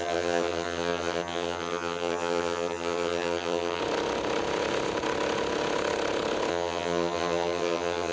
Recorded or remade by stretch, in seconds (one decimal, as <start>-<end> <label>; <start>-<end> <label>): 0.0-3.8 remade; 3.8-6.5 recorded; 6.5-8.1 remade